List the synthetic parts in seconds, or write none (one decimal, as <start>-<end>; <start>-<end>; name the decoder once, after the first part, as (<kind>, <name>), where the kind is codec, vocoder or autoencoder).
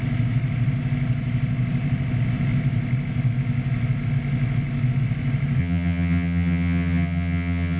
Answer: 5.6-7.8 (vocoder, HiFi-GAN)